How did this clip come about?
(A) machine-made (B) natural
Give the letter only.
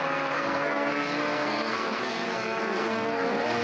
A